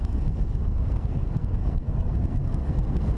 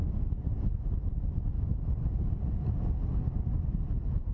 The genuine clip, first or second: second